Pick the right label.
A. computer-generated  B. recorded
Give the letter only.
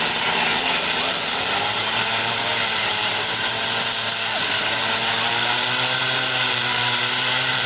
A